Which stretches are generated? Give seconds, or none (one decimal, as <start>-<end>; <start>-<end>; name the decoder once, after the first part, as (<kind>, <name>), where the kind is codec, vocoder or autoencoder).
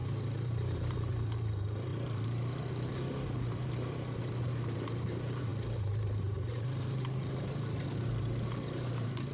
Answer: 0.0-9.3 (vocoder, BigVGAN v2)